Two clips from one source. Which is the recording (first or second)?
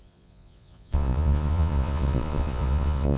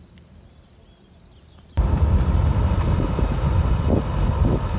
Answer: second